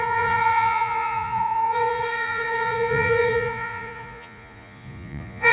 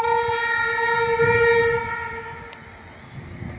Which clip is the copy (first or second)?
first